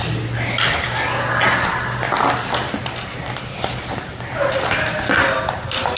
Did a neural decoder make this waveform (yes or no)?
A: no